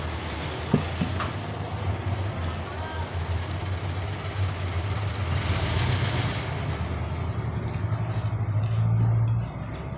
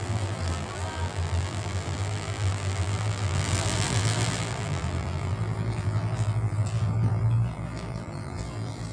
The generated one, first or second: second